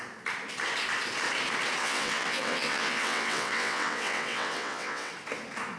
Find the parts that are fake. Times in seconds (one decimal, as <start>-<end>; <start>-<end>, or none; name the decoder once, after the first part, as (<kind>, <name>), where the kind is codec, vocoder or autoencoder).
1.8-5.1 (vocoder, WaveNeXt)